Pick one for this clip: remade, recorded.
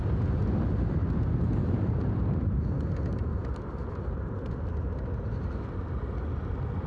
recorded